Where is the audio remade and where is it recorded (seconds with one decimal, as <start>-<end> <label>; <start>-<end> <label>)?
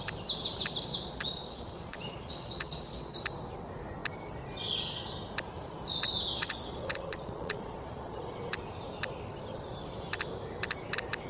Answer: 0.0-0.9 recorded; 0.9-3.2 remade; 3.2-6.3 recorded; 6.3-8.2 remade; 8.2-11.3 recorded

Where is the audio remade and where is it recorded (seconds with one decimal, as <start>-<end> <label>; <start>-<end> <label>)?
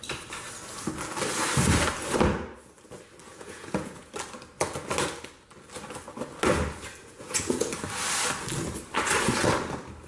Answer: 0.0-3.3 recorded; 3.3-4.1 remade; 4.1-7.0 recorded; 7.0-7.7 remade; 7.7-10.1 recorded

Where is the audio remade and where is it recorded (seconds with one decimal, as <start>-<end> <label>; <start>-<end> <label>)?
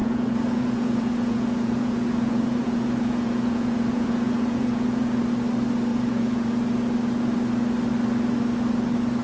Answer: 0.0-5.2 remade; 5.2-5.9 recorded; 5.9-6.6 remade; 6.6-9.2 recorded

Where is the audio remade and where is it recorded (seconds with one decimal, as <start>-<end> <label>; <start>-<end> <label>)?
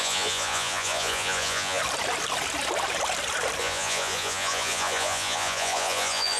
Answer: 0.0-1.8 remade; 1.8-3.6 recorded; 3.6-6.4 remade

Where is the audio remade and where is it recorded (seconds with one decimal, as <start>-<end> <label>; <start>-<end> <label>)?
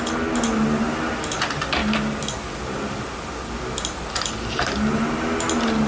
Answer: 0.0-5.9 recorded